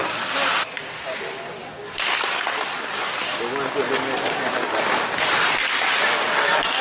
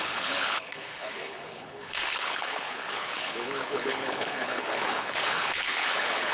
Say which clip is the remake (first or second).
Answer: second